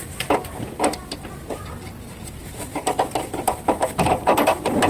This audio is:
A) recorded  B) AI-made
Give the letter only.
A